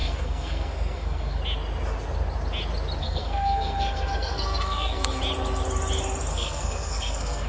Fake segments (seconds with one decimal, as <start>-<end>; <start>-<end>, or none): 0.0-1.4; 3.0-5.2; 6.3-7.5